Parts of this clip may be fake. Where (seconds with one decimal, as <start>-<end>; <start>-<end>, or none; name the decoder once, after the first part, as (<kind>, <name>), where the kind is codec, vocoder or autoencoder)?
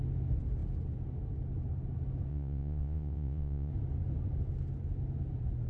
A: 2.3-3.7 (vocoder, Vocos)